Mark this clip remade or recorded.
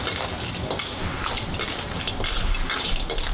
recorded